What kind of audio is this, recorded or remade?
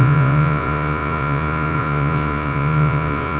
remade